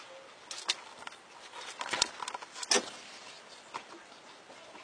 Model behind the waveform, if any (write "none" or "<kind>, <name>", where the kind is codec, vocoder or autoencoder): none